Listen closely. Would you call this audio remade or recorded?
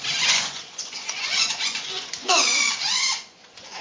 remade